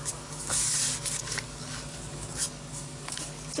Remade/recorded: remade